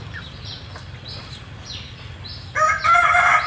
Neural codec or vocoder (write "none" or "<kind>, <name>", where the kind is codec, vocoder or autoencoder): none